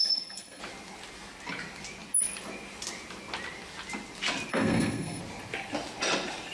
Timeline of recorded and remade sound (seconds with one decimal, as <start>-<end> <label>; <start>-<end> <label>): 0.0-0.6 remade; 0.6-4.5 recorded; 4.5-5.2 remade; 5.2-6.5 recorded